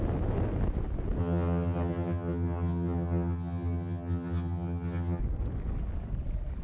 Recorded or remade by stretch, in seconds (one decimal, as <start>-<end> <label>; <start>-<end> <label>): 0.0-1.2 recorded; 1.2-5.2 remade; 5.2-6.6 recorded